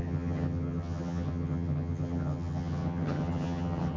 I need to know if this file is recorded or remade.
remade